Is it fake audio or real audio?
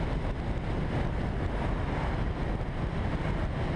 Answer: real